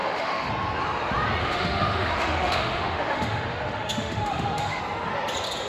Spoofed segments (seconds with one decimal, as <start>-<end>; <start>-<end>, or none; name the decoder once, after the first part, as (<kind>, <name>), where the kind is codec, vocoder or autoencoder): 0.0-0.5 (autoencoder, DAC-VAE); 1.4-4.8